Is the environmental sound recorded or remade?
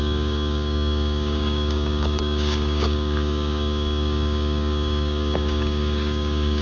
remade